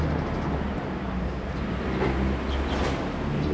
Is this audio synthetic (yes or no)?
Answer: no